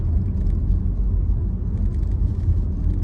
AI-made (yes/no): no